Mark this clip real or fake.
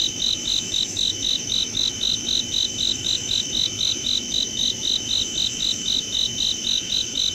fake